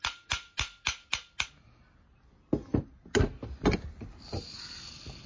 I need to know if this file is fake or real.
real